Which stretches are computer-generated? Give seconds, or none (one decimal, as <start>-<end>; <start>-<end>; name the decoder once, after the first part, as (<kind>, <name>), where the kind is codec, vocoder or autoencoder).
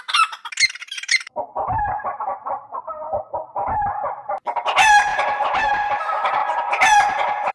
0.8-1.8 (vocoder, BigVGAN v2); 5.1-5.7